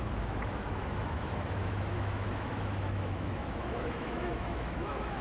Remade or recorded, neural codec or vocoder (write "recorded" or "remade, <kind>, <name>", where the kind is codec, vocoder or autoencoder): remade, autoencoder, DAC-VAE